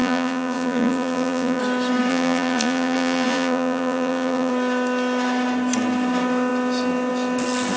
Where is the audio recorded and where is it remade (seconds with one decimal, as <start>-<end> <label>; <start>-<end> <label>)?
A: 0.0-1.6 remade; 1.6-2.1 recorded; 2.1-4.5 remade; 4.5-7.8 recorded